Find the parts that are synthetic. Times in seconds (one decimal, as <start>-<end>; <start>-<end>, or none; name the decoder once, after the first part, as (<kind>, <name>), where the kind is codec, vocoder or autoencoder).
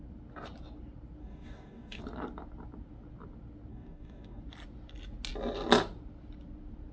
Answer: 1.2-2.0 (codec, DAC); 3.7-4.4